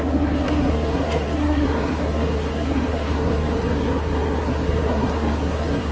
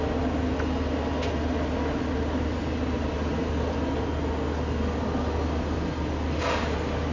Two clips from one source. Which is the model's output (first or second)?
first